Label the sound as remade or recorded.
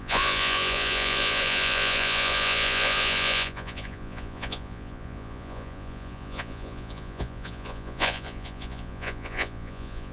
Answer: remade